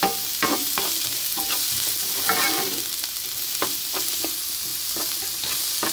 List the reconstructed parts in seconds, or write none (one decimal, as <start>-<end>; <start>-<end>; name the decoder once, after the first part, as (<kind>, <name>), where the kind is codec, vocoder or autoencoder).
none